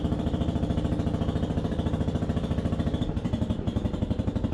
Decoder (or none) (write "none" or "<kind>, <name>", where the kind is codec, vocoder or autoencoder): vocoder, BigVGAN v2